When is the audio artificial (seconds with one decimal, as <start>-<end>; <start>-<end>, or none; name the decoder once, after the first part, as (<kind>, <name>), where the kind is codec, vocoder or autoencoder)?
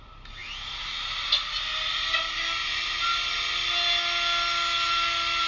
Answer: none